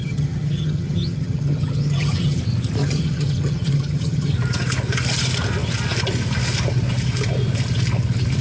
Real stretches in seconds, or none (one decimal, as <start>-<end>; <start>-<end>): 2.4-2.8; 4.3-8.4